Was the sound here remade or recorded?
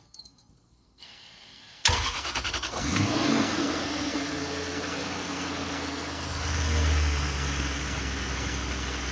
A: remade